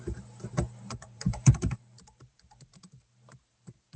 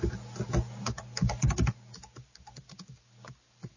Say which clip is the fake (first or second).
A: first